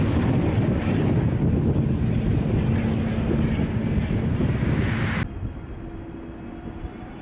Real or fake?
real